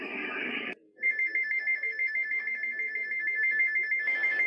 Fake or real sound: fake